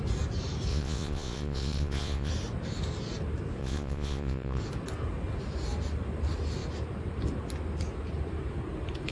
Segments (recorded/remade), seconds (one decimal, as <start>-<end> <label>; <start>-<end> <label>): 0.0-0.7 recorded; 0.7-2.3 remade; 2.3-3.6 recorded; 3.6-4.6 remade; 4.6-9.1 recorded